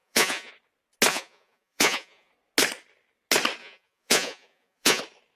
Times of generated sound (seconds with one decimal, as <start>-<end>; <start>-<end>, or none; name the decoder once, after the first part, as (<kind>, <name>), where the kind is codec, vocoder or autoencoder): 0.0-0.5 (vocoder, Vocos); 1.1-2.3; 3.6-5.0